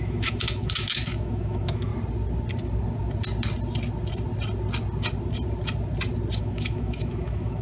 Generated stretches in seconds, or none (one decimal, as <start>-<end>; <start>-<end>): 0.0-1.9; 6.4-7.6